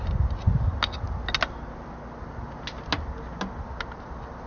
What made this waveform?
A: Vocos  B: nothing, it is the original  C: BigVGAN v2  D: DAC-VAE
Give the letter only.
B